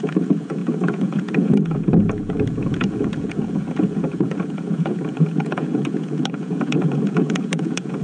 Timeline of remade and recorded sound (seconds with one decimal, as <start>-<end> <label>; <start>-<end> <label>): 0.0-8.0 remade

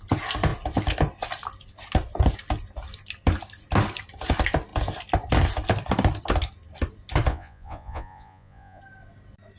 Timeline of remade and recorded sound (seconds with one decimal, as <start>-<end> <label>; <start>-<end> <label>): 0.0-7.3 recorded; 7.3-8.8 remade; 8.8-9.6 recorded